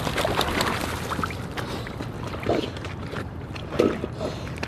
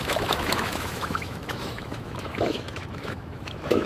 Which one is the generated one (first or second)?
second